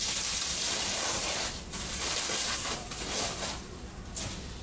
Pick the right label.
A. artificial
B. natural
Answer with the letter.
A